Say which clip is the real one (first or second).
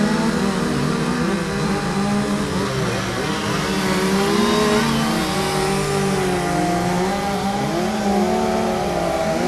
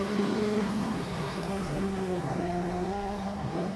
first